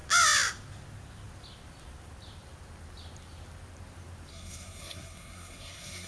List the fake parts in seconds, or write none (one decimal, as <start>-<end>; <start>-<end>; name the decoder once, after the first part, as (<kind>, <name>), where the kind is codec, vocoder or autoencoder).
4.3-6.1 (codec, SNAC)